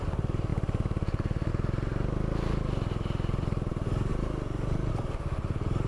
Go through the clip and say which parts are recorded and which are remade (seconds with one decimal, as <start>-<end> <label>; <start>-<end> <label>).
0.0-1.9 remade; 1.9-3.4 recorded; 3.4-4.1 remade; 4.1-4.9 recorded; 4.9-5.9 remade